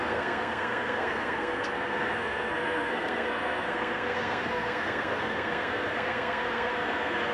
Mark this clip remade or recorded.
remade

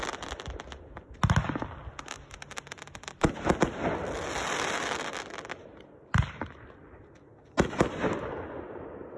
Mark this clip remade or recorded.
recorded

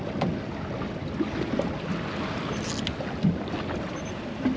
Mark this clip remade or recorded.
recorded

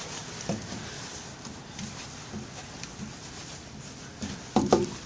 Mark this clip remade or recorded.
recorded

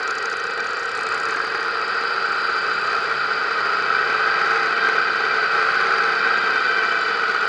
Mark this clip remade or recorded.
recorded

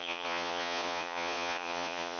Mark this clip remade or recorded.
remade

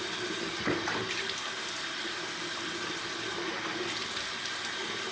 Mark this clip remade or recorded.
recorded